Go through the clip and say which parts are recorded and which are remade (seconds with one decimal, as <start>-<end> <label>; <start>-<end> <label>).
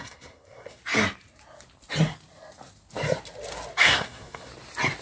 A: 0.0-0.8 remade; 0.8-3.8 recorded; 3.8-4.5 remade; 4.5-5.0 recorded